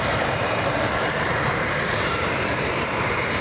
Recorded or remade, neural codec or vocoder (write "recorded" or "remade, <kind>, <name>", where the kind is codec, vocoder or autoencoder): remade, vocoder, BigVGAN v2